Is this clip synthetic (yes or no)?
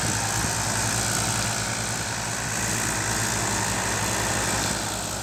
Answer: no